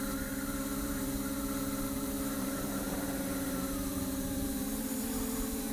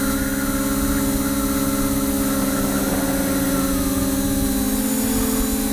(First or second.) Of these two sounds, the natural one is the second